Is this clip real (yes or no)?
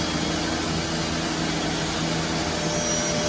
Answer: yes